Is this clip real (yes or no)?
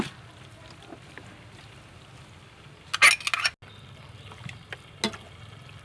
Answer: yes